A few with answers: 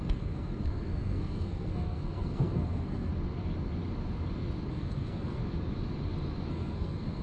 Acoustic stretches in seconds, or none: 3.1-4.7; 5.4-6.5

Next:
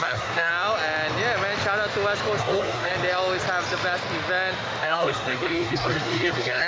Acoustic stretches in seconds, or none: 0.5-2.4; 2.9-4.8

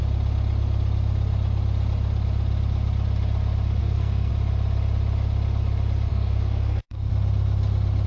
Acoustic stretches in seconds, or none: 0.0-3.8; 4.3-6.1; 7.1-8.1

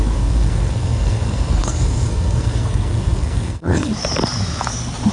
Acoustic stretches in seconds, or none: 3.9-5.1

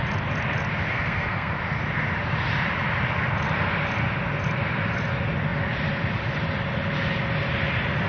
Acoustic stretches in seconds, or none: 0.0-0.9; 1.5-8.1

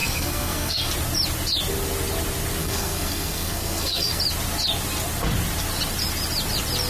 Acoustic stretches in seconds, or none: 0.9-2.6; 4.2-6.9

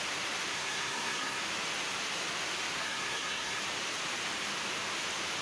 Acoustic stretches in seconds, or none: 0.0-0.5; 1.4-2.8; 3.6-5.4